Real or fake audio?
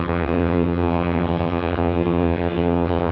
fake